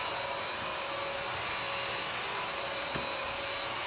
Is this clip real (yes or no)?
yes